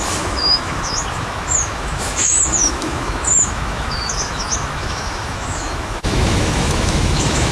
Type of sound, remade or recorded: remade